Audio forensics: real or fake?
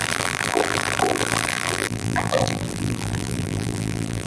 fake